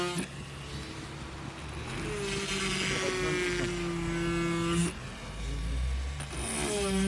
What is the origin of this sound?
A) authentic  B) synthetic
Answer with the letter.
A